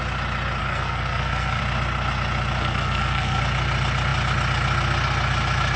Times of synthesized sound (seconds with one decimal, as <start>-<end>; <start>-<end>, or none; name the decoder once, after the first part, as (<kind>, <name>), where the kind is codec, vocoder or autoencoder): 0.6-1.6 (codec, SNAC); 2.6-3.4